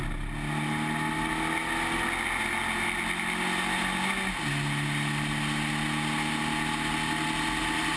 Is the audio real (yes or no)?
yes